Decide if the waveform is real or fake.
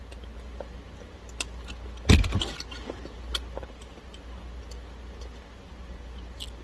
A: real